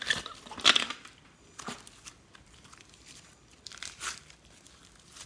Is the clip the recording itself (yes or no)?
no